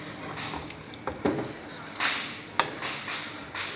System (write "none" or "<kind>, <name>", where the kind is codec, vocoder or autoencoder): none